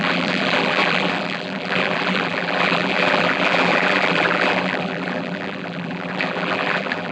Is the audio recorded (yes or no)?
no